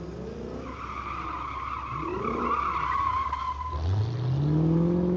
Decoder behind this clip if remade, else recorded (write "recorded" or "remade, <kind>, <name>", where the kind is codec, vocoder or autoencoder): recorded